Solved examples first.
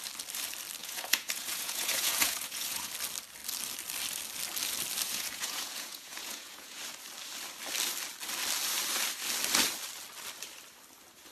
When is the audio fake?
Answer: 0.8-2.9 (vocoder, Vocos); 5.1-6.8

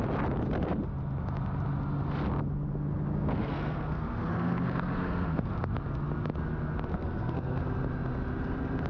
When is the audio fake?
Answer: 3.4-5.5 (codec, SNAC); 6.9-7.6